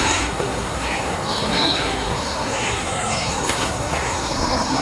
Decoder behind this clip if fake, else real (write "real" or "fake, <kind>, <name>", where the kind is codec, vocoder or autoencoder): fake, codec, SNAC